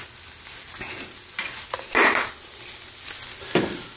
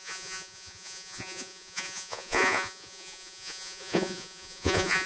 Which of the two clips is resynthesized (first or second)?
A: second